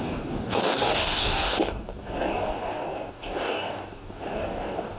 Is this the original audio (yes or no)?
no